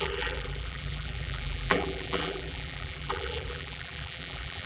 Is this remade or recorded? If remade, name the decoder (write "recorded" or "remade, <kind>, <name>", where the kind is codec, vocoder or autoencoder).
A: remade, vocoder, BigVGAN v2